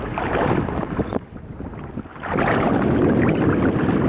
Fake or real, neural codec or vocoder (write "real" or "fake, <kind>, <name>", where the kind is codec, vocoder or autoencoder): real